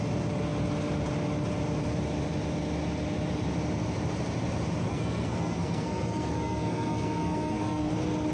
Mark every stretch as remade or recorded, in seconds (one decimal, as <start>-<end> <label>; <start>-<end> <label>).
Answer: 0.0-4.9 recorded; 4.9-7.9 remade; 7.9-8.3 recorded